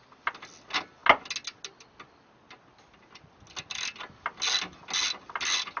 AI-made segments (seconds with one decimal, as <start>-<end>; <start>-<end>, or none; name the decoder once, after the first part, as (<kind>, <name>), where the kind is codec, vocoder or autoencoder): none